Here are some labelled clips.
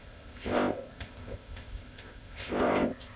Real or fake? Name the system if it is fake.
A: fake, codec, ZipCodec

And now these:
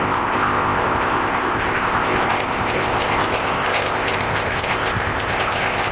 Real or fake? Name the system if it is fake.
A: fake, codec, ZipCodec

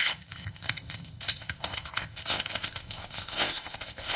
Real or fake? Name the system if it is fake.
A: fake, codec, ZipCodec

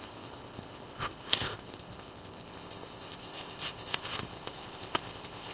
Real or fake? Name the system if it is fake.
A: fake, codec, ZipCodec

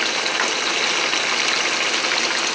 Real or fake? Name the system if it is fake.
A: real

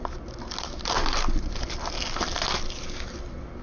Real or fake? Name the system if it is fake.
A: real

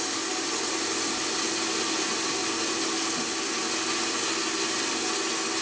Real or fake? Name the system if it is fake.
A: real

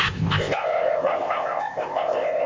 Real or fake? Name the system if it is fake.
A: fake, codec, ZipCodec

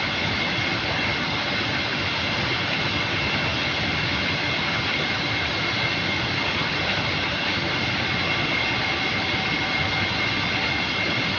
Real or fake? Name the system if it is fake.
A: real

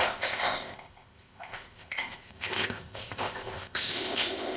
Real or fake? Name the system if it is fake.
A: fake, codec, ZipCodec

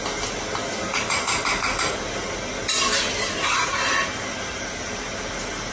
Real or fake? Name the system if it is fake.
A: real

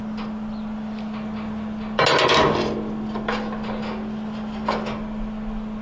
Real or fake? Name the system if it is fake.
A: real